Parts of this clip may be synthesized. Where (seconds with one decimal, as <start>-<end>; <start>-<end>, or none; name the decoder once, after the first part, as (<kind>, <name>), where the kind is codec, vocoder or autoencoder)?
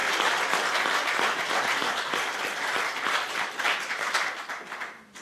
none